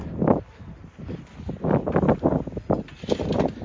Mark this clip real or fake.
real